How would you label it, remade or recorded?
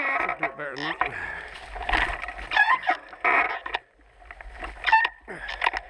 recorded